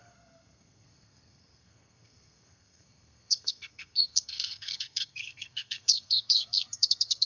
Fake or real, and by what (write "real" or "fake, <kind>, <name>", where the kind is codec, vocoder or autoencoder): fake, codec, SNAC